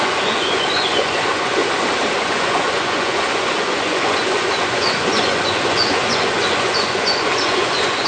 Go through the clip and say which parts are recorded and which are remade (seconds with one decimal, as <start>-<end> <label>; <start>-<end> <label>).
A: 0.0-1.6 remade; 1.6-2.2 recorded; 2.2-8.1 remade